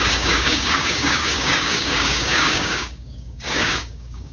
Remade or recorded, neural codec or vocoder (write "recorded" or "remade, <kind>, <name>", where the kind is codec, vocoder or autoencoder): remade, codec, DAC